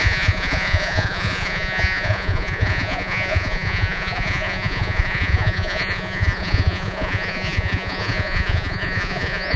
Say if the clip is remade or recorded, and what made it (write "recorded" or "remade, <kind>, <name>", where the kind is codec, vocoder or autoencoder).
remade, vocoder, Vocos